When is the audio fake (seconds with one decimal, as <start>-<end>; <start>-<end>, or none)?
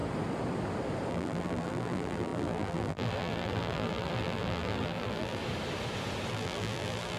1.1-5.4; 6.3-7.2